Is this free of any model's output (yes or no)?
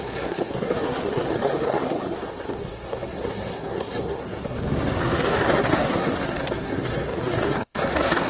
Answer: no